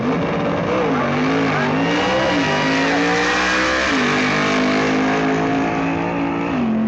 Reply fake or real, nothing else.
real